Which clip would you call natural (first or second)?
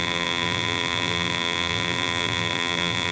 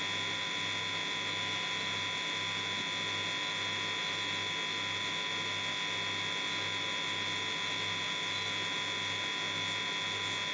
second